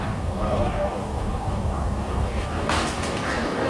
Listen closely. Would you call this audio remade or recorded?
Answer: remade